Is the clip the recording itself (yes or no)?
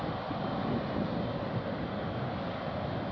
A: yes